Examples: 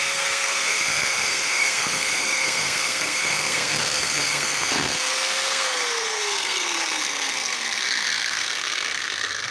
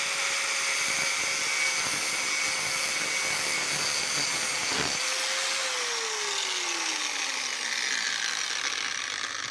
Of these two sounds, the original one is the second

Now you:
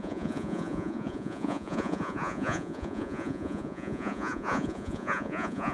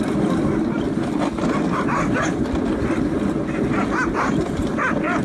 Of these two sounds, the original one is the second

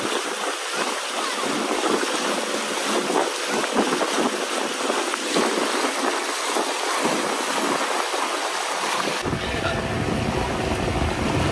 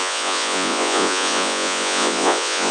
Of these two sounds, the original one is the first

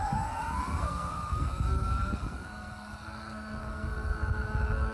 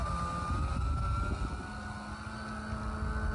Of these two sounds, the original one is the second